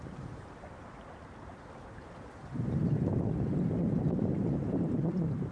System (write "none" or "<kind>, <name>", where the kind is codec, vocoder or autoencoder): vocoder, BigVGAN v2